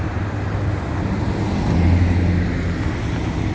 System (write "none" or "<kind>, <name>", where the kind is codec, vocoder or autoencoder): none